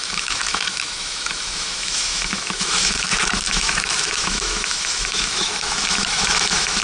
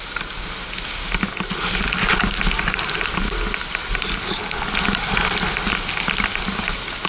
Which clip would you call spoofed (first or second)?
first